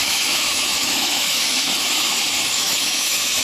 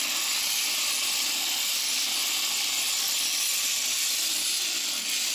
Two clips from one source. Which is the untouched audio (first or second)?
second